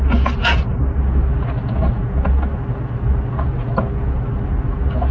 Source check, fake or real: real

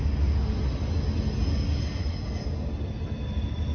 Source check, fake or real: real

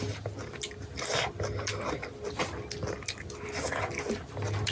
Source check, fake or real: real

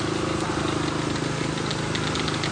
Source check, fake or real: real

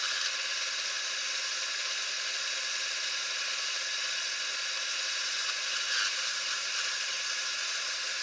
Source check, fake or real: real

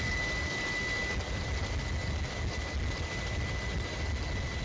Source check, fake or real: real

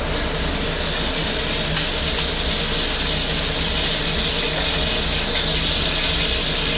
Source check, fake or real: real